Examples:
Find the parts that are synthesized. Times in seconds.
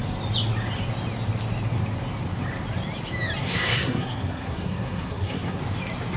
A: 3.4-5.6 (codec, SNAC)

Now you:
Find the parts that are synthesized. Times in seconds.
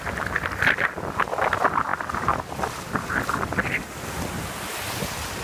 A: none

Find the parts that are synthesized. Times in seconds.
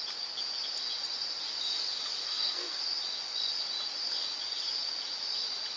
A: 2.2-2.8 (codec, SNAC)